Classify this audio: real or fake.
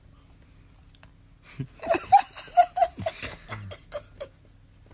real